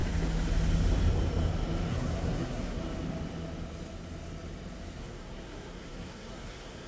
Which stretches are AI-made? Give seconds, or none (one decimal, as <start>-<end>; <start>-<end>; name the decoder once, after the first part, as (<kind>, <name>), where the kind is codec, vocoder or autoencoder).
1.9-2.8 (codec, SNAC); 5.0-6.9